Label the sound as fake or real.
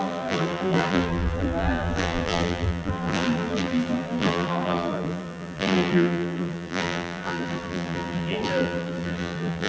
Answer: fake